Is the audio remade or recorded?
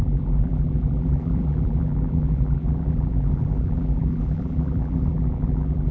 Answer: remade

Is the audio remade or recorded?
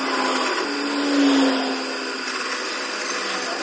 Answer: recorded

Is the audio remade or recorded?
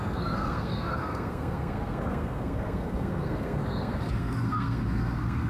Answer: remade